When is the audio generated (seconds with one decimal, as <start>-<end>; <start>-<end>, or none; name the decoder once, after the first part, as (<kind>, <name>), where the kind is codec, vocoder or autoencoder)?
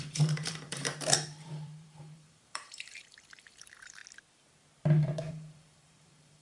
0.0-4.0 (vocoder, BigVGAN v2); 5.3-6.4